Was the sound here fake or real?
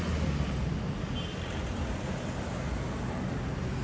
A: real